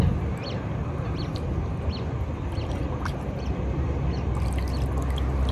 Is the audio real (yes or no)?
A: yes